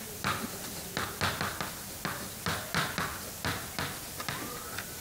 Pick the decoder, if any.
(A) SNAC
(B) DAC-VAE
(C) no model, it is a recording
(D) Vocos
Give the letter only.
C